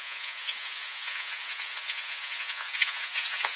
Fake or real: fake